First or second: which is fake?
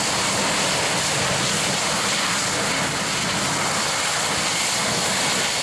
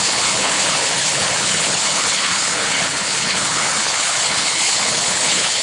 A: second